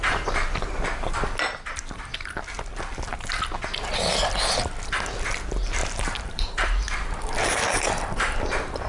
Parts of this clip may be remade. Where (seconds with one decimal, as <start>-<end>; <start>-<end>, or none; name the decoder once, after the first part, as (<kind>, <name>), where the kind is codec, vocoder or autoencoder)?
5.8-8.9 (vocoder, BigVGAN v2)